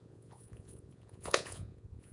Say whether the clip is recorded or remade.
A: remade